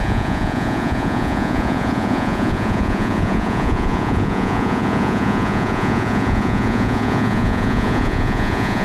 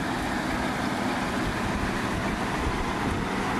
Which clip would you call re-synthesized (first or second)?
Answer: first